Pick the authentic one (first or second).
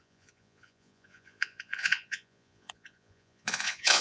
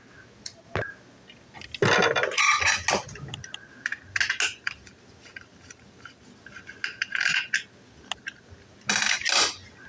second